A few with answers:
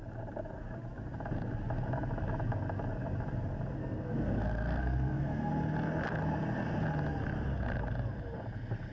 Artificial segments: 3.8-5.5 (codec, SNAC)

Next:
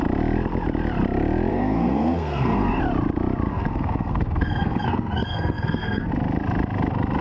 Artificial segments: 1.5-2.8 (codec, SNAC); 3.5-6.1